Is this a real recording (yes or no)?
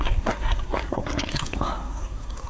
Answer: no